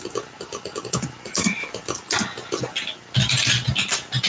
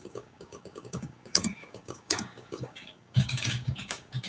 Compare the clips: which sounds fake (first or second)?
second